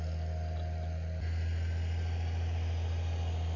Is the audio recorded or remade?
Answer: recorded